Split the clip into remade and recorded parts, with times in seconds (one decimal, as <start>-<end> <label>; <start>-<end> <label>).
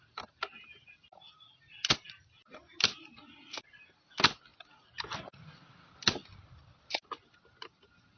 0.0-8.2 recorded